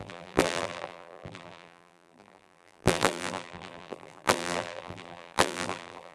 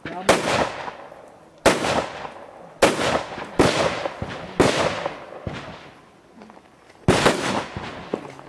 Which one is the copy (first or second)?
first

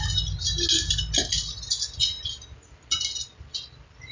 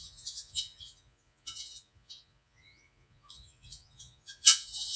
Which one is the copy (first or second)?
second